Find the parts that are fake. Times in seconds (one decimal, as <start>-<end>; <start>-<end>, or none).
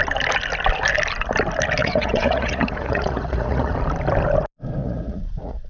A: 1.8-3.7; 4.8-5.7